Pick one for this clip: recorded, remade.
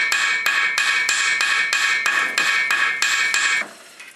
recorded